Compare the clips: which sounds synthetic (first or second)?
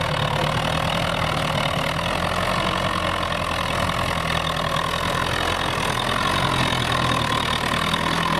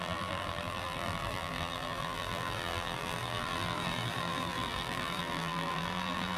second